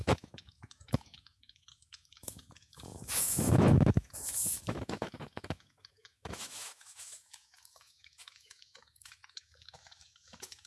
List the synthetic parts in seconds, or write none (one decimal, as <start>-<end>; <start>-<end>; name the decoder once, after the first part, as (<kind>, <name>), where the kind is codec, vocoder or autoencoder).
0.0-10.7 (autoencoder, DAC-VAE)